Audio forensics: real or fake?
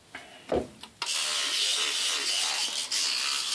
real